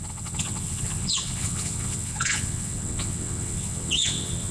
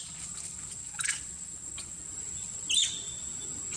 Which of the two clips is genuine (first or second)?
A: second